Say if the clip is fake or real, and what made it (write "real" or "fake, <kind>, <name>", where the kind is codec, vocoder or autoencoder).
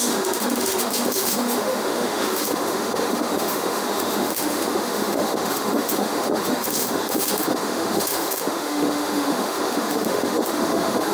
fake, autoencoder, DAC-VAE